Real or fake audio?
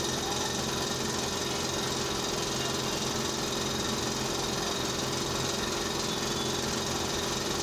real